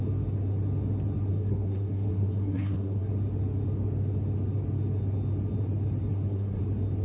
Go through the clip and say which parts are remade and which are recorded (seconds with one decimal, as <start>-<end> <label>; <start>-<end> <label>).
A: 0.0-1.3 recorded; 1.3-3.1 remade; 3.1-6.1 recorded; 6.1-6.6 remade; 6.6-7.0 recorded

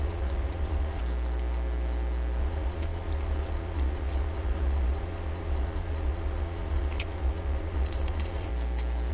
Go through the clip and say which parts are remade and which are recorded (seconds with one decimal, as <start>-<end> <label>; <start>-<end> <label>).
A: 0.0-1.0 remade; 1.0-2.4 recorded; 2.4-8.5 remade; 8.5-9.1 recorded